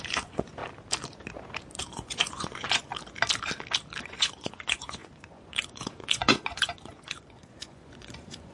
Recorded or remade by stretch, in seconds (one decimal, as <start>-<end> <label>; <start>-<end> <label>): 0.0-0.6 remade; 0.6-1.8 recorded; 1.8-2.9 remade; 2.9-4.0 recorded; 4.0-8.5 remade